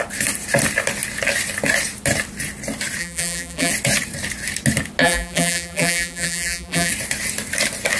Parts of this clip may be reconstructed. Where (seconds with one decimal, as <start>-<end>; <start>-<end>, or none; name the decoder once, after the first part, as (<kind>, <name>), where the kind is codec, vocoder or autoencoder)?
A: 3.0-3.7 (vocoder, BigVGAN v2); 5.0-6.9